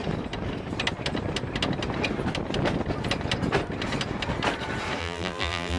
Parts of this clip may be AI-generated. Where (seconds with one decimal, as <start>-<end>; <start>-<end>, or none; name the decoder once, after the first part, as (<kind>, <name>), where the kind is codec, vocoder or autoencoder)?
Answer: 5.0-5.8 (vocoder, BigVGAN v2)